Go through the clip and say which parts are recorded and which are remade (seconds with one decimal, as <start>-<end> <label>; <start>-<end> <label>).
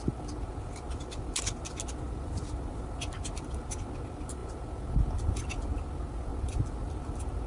0.0-6.3 recorded; 6.3-7.1 remade; 7.1-7.5 recorded